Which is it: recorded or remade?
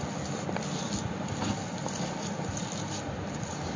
recorded